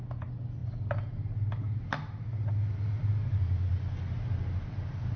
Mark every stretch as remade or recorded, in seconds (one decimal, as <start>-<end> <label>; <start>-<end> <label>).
0.0-5.2 recorded